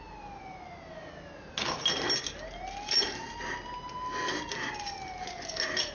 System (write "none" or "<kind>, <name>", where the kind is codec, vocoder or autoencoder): none